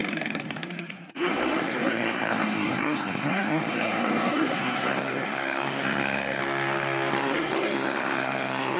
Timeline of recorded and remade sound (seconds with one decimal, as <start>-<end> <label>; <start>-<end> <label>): 0.0-6.4 remade; 6.4-7.1 recorded; 7.1-8.8 remade